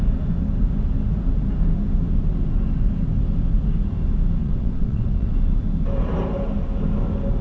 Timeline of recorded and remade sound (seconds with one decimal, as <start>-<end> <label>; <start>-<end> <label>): 0.0-4.4 recorded; 4.4-5.3 remade; 5.3-7.4 recorded